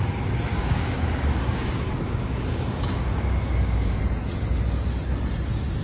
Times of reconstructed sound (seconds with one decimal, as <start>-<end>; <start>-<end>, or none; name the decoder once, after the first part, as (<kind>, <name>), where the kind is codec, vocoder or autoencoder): 0.5-4.0 (codec, DAC)